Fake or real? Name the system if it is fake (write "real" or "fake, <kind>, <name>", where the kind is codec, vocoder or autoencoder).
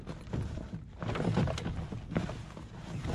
real